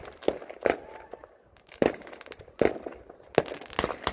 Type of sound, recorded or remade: recorded